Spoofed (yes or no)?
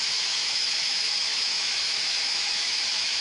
yes